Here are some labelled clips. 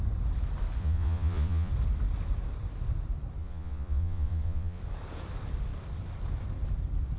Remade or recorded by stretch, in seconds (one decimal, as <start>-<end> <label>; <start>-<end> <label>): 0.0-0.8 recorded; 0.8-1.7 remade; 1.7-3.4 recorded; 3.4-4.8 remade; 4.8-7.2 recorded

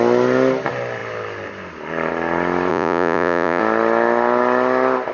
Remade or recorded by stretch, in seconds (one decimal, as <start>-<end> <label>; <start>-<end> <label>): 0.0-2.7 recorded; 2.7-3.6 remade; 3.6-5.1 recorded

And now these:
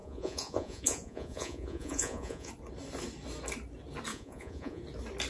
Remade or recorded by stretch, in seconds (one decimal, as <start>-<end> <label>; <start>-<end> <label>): 0.0-2.5 remade; 2.5-4.1 recorded; 4.1-4.8 remade; 4.8-5.3 recorded

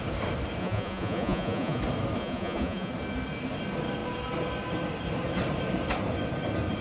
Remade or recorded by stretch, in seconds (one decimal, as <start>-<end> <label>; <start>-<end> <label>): 0.0-0.6 recorded; 0.6-1.8 remade; 1.8-2.2 recorded; 2.2-2.9 remade; 2.9-6.8 recorded

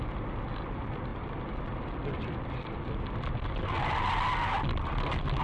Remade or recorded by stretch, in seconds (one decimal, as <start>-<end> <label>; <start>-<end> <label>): 0.0-5.4 recorded

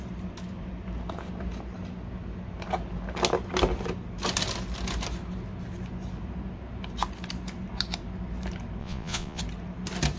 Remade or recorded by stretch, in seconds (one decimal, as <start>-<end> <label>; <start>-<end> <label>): 0.0-8.8 recorded; 8.8-9.4 remade; 9.4-10.2 recorded

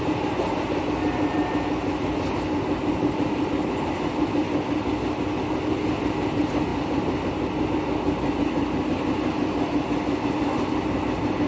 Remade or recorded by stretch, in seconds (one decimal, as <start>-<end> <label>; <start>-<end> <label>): 0.0-11.5 recorded

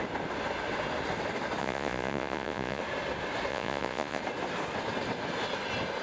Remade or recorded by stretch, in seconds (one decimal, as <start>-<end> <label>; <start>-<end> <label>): 0.0-1.6 recorded; 1.6-2.8 remade; 2.8-3.5 recorded; 3.5-4.2 remade; 4.2-6.0 recorded